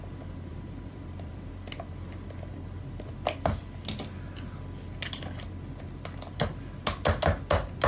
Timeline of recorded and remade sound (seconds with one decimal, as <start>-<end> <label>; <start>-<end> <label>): 0.0-0.5 recorded; 0.5-1.5 remade; 1.5-7.9 recorded